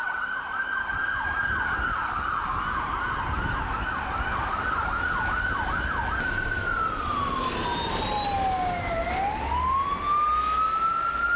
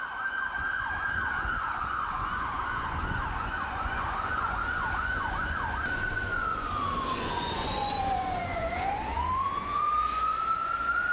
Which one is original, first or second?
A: first